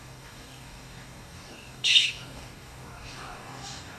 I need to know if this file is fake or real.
fake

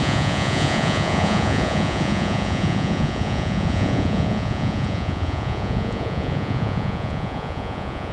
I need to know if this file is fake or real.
fake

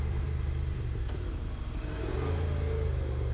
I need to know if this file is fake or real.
real